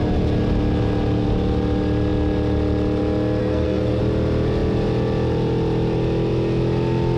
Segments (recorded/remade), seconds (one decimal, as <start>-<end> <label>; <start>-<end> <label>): 0.0-3.4 recorded; 3.4-4.0 remade; 4.0-7.2 recorded